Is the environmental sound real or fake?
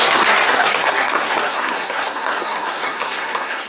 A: fake